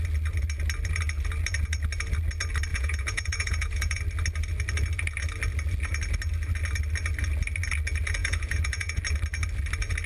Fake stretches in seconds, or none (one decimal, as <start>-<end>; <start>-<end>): 2.7-4.0; 8.2-9.0